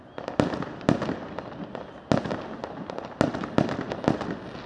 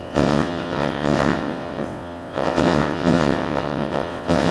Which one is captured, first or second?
first